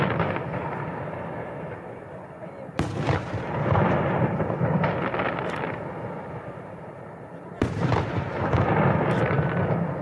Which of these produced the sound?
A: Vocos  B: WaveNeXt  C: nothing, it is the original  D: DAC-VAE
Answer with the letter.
C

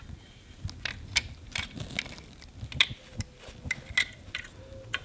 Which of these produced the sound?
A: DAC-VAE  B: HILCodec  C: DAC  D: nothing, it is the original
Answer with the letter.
D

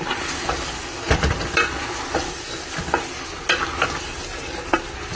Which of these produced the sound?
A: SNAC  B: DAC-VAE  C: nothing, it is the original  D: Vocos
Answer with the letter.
C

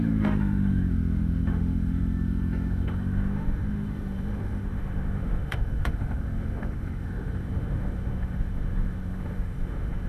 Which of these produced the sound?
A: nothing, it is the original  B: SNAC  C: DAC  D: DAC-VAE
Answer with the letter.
D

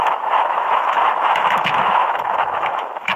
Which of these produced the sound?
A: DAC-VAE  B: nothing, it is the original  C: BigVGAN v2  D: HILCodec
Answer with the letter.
A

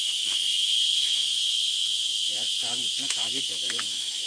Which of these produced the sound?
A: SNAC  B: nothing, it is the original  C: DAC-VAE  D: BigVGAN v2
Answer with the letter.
C